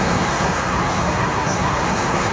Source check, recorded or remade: remade